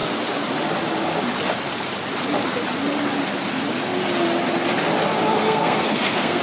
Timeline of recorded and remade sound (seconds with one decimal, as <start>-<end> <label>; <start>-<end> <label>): 0.0-5.4 recorded; 5.4-6.4 remade